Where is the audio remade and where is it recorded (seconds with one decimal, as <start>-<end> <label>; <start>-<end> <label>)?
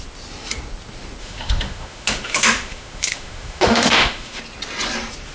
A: 0.0-1.2 recorded; 1.2-4.4 remade; 4.4-5.3 recorded